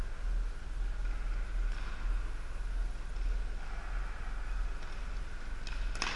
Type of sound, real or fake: real